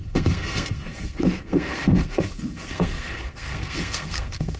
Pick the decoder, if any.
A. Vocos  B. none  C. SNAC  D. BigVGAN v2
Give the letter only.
C